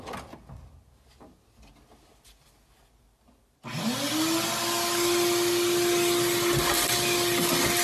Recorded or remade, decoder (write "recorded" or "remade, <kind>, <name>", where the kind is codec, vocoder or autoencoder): recorded